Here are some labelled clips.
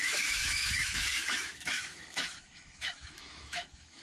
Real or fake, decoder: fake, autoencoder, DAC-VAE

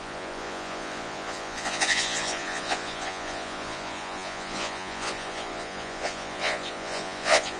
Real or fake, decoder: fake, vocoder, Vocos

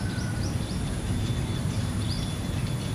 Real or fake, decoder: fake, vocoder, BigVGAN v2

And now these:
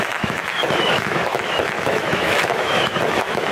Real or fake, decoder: fake, autoencoder, DAC-VAE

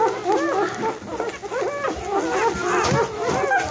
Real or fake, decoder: real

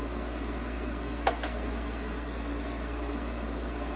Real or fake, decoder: fake, codec, SNAC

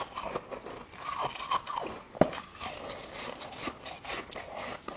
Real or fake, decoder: real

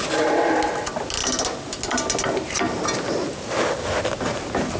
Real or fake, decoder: real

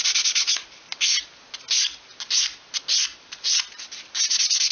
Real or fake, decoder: real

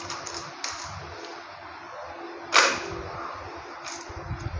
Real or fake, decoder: real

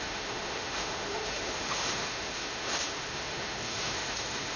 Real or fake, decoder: fake, autoencoder, DAC-VAE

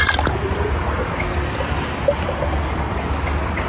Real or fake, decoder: real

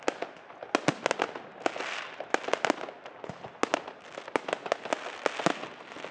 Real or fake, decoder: real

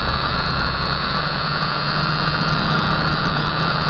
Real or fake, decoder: fake, vocoder, Vocos